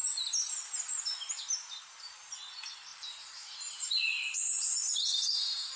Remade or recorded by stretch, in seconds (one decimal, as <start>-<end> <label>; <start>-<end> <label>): 0.0-1.8 recorded; 1.8-5.8 remade